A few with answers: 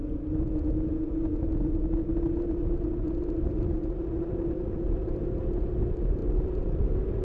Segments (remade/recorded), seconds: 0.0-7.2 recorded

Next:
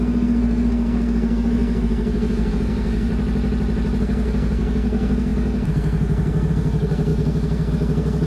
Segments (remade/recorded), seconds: 0.0-3.1 remade; 3.1-4.0 recorded; 4.0-8.3 remade

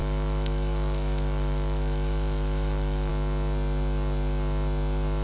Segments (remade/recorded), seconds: 0.0-3.1 remade; 3.1-5.2 recorded

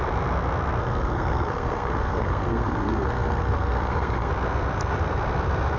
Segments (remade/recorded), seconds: 0.0-0.8 recorded; 0.8-4.3 remade; 4.3-5.8 recorded

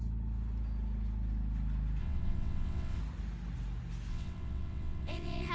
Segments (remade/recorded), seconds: 0.0-2.0 recorded; 2.0-3.0 remade; 3.0-4.1 recorded; 4.1-5.5 remade

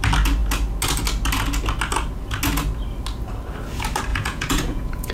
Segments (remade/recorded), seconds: 0.0-4.1 recorded; 4.1-5.1 remade